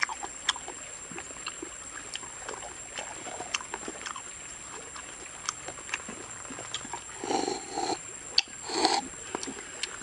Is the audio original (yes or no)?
yes